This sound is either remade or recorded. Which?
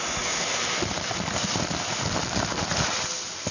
remade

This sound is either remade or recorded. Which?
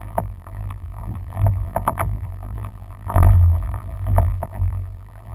remade